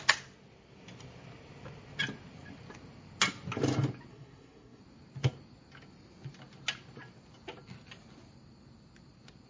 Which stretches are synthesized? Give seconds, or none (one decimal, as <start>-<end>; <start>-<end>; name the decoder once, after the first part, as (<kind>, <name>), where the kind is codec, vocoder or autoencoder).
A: 4.1-4.8 (codec, SNAC)